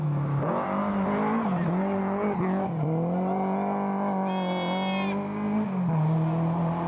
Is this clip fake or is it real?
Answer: real